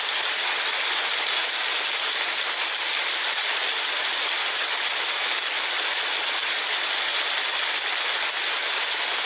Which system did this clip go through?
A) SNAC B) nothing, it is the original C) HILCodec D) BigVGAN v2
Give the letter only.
B